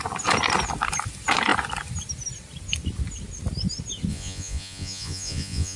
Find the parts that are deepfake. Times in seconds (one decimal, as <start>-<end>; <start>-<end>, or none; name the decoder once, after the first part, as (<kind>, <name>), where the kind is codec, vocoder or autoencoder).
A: 4.1-5.8 (vocoder, Vocos)